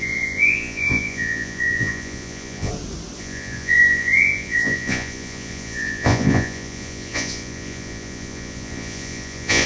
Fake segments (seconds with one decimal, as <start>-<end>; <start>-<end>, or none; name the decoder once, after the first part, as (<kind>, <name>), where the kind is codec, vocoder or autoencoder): 0.0-2.7 (vocoder, Vocos); 3.2-9.7